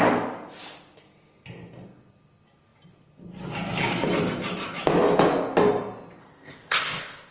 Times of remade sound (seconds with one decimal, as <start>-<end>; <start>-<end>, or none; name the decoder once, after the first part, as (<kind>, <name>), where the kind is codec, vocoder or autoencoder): 6.2-7.3 (codec, ZipCodec)